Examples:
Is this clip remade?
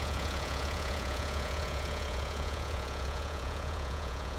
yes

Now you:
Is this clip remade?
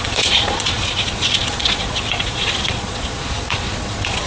yes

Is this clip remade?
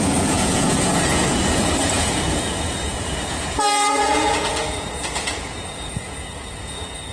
yes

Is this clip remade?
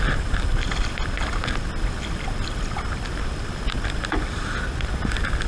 no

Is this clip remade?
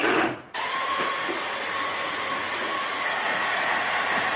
yes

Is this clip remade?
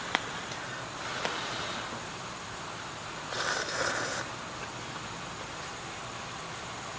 no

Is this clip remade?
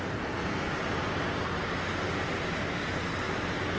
no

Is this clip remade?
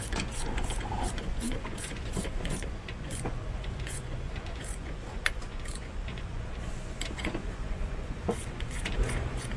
yes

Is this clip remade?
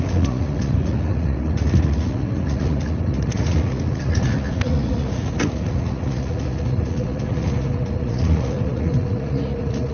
yes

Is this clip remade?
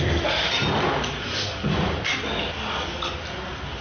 no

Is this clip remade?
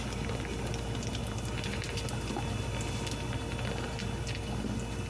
no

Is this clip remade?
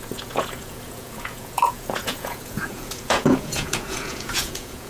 yes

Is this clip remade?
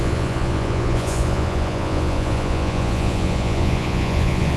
yes